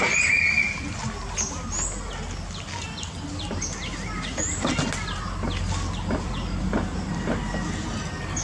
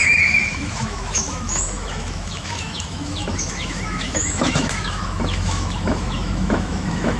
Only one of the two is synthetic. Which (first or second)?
second